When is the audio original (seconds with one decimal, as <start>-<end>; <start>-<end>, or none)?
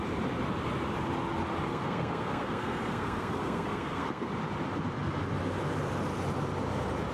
0.0-1.7; 4.3-7.1